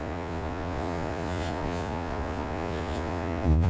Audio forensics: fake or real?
fake